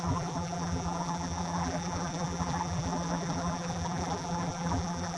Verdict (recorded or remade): remade